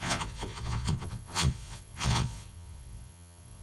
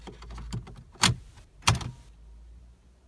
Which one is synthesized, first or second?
first